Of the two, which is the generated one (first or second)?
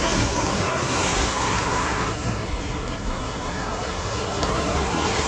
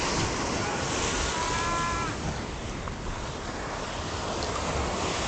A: first